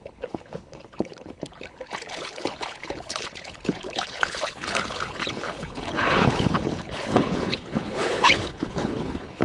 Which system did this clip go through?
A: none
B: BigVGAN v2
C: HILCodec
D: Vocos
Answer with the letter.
C